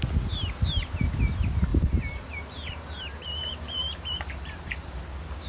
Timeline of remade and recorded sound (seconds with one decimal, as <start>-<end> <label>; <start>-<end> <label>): 0.0-1.7 recorded; 1.7-5.0 remade; 5.0-5.5 recorded